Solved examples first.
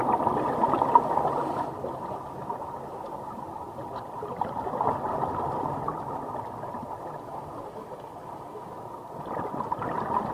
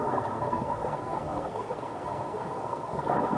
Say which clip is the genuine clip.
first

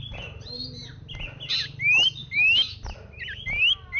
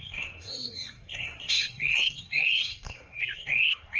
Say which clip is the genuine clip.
first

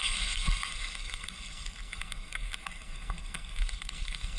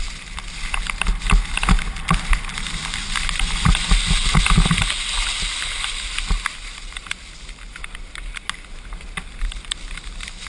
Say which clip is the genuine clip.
second